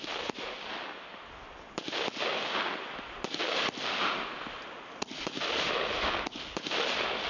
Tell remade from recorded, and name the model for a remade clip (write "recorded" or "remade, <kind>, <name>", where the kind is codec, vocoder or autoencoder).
recorded